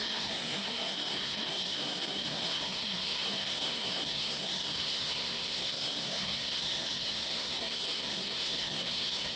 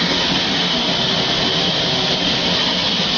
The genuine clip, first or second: second